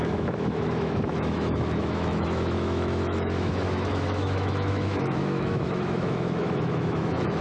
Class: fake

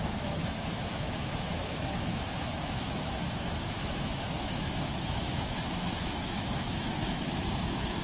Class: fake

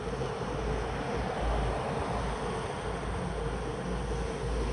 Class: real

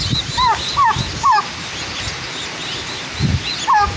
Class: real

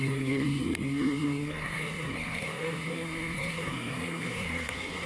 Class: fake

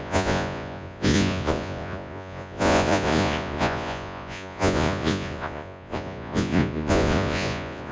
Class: fake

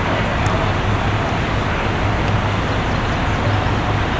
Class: real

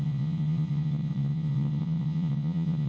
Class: fake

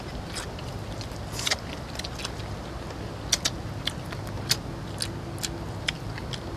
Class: real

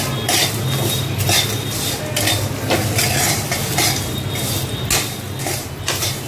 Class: real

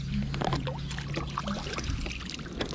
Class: real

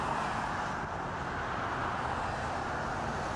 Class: real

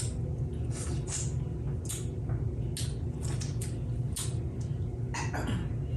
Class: real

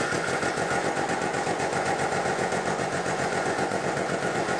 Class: fake